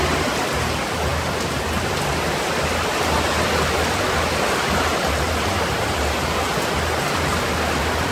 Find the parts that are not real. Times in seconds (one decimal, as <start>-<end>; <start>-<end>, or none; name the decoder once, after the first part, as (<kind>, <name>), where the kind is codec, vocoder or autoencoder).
none

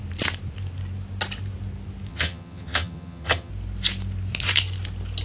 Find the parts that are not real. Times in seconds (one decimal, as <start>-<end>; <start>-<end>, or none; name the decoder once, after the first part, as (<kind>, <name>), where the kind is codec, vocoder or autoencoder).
2.1-3.5 (vocoder, HiFi-GAN)

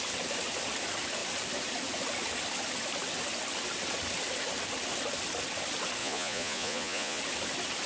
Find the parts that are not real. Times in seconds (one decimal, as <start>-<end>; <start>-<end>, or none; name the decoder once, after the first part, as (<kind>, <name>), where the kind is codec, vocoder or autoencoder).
6.0-7.2 (vocoder, Vocos)

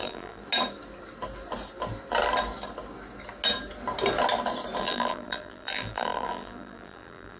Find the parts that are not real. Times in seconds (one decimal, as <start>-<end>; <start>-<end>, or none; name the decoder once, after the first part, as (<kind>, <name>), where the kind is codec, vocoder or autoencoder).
0.0-0.4 (vocoder, BigVGAN v2); 4.8-7.4

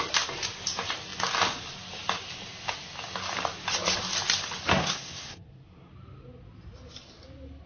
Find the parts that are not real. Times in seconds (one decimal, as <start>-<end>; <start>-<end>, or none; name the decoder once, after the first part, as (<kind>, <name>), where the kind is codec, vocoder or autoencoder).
4.7-5.9 (codec, SNAC)

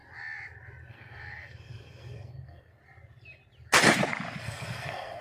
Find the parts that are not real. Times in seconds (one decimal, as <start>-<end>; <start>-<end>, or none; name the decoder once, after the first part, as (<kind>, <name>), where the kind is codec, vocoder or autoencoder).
0.9-2.8 (codec, SNAC); 4.4-5.2